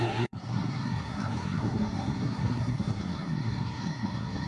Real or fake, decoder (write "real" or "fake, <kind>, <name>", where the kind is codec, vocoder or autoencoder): fake, codec, SNAC